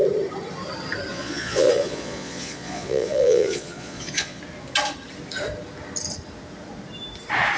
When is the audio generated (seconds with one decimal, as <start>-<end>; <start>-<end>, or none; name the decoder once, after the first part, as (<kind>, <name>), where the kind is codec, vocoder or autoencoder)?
1.1-4.4 (vocoder, Vocos)

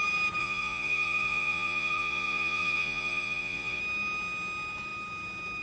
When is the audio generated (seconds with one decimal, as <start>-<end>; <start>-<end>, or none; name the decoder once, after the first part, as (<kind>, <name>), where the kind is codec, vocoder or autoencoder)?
0.4-3.8 (vocoder, Vocos)

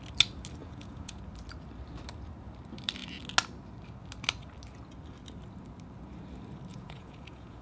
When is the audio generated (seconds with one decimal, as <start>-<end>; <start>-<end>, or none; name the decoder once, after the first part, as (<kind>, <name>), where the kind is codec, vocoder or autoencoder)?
0.6-1.2 (vocoder, Vocos); 6.7-7.6

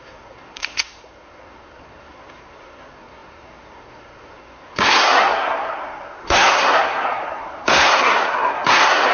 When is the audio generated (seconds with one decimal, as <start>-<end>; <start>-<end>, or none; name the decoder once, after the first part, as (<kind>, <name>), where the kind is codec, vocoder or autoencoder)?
0.0-9.1 (codec, SNAC)

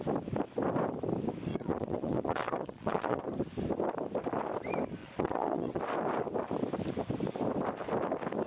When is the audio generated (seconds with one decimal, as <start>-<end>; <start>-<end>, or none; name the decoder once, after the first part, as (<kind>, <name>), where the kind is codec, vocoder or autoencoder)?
1.5-3.2 (vocoder, Vocos); 5.0-5.8

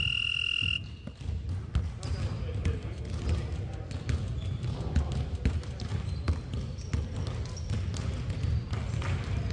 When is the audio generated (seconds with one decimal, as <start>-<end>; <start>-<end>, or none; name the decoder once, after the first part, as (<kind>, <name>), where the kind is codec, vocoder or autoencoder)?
none

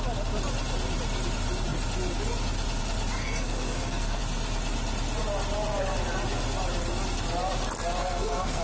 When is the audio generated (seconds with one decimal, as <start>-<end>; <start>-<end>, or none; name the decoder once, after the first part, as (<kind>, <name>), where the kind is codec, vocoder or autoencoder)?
3.2-4.2 (codec, SNAC); 8.0-8.6